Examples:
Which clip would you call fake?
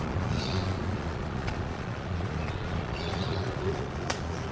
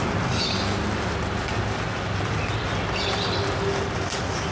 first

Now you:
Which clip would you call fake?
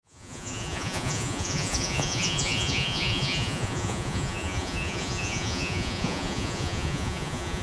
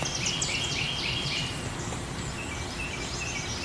first